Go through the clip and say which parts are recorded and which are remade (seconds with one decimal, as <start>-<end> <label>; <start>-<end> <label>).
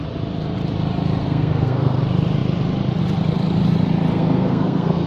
0.0-1.2 recorded; 1.2-2.0 remade; 2.0-4.1 recorded; 4.1-5.1 remade